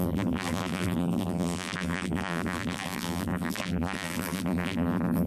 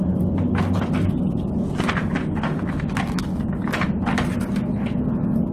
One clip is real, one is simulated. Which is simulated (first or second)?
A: first